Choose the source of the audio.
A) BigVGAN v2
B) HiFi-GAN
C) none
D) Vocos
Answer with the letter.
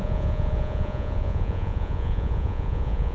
D